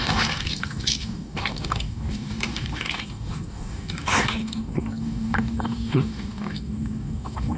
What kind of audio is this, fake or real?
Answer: fake